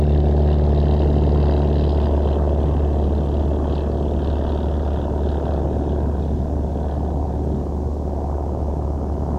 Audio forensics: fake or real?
real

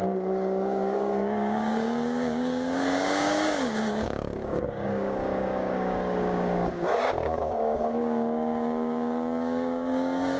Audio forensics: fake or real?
fake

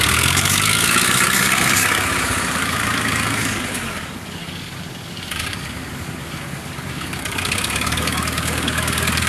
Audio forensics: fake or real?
fake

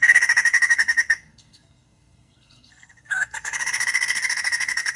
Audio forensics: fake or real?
fake